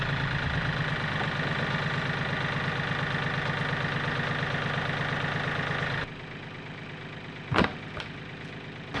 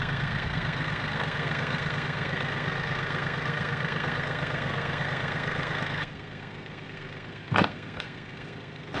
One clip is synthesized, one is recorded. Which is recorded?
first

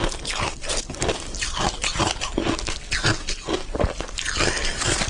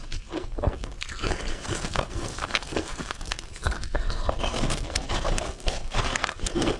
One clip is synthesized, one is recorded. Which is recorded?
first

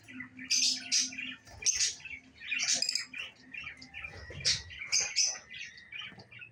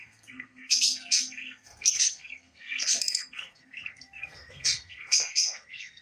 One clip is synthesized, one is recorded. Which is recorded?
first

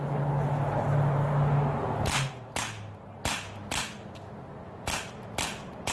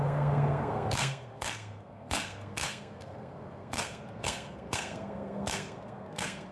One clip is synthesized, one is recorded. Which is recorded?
first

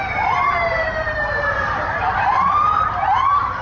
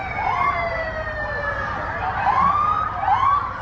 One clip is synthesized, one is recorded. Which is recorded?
second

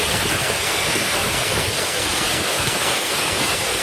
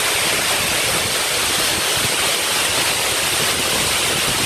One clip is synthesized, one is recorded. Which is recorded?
second